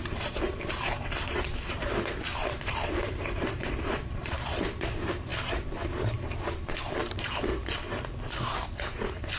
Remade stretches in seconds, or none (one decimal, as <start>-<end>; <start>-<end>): 0.0-7.5